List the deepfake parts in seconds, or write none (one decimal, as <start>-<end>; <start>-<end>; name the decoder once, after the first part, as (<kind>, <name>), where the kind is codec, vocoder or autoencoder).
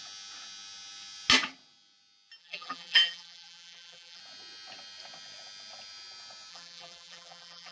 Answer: 2.4-4.2 (vocoder, BigVGAN v2); 6.5-7.7